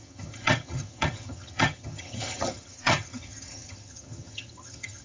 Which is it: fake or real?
fake